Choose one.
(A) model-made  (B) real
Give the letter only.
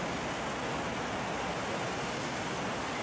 B